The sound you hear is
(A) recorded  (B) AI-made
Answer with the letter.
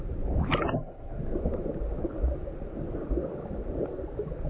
A